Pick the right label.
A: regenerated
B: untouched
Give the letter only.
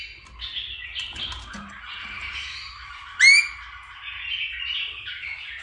B